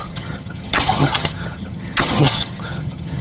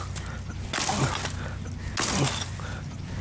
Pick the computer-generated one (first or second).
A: first